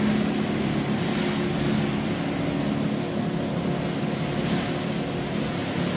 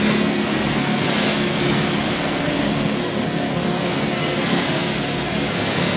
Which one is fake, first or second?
second